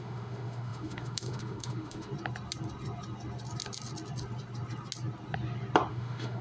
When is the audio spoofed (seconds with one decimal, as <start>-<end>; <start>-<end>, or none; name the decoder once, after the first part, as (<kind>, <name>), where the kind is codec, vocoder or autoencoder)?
0.0-2.1 (autoencoder, DAC-VAE); 5.9-6.4